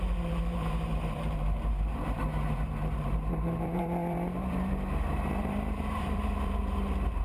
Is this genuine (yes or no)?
no